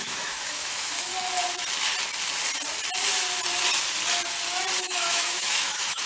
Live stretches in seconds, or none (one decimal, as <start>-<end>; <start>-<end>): 1.1-4.8